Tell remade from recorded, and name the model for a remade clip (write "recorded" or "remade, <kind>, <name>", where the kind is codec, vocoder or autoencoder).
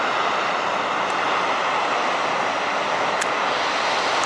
recorded